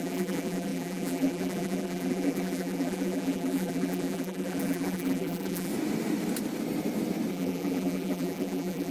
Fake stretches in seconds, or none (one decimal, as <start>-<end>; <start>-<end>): 0.0-5.7; 7.3-8.9